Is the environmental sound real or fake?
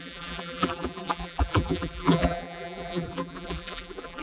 fake